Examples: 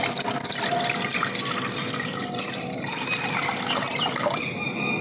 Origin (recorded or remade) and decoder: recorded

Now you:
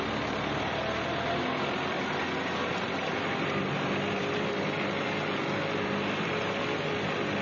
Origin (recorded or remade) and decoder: recorded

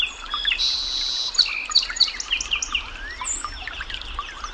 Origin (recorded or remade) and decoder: recorded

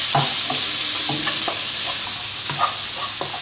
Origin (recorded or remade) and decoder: recorded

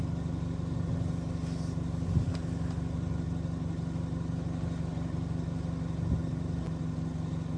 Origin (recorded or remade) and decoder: recorded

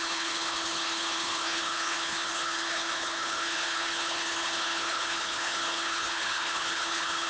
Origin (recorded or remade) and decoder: remade, codec, HILCodec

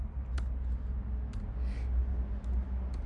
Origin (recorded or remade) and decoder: recorded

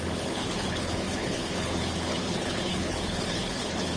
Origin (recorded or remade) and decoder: remade, codec, HILCodec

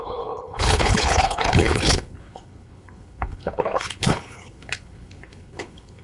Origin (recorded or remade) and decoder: remade, codec, HILCodec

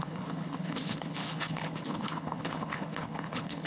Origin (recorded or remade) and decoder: remade, codec, HILCodec